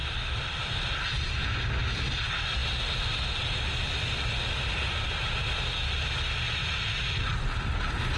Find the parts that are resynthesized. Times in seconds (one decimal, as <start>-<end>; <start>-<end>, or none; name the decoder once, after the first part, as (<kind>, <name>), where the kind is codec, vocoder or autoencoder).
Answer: none